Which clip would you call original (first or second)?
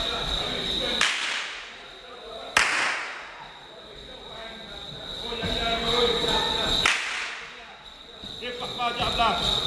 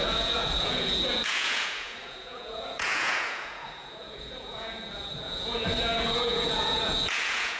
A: first